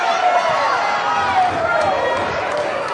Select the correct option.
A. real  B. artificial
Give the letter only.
A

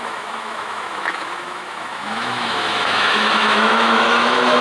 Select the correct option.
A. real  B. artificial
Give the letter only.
B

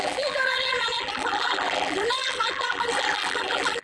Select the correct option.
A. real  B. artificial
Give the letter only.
B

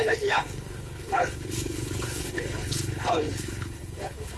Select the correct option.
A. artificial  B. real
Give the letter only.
A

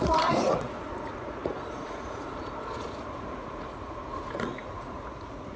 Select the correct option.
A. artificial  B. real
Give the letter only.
A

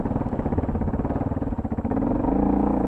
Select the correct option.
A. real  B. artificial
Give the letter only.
A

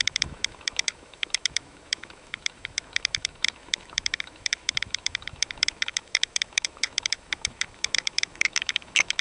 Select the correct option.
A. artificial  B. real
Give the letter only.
A